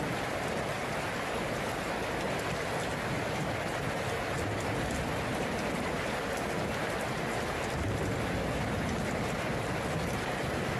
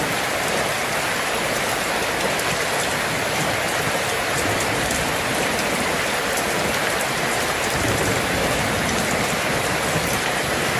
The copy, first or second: second